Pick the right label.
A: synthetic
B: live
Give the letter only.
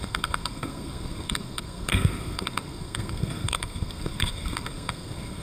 A